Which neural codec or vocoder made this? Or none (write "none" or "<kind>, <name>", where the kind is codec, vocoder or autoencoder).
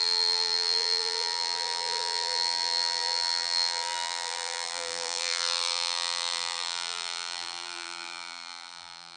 vocoder, BigVGAN v2